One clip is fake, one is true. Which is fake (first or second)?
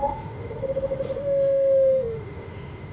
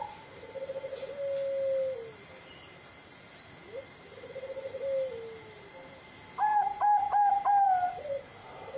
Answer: first